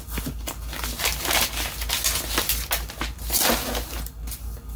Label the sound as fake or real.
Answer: real